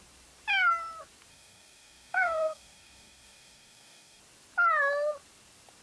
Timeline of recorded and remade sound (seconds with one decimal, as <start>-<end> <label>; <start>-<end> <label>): 0.0-1.3 recorded; 1.3-4.2 remade; 4.2-5.8 recorded